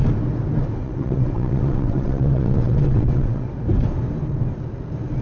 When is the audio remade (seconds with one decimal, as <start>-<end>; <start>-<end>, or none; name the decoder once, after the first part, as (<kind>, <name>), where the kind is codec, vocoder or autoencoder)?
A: 0.8-3.5 (vocoder, WaveNeXt)